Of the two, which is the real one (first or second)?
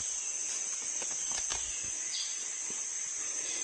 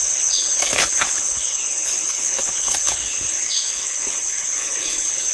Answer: first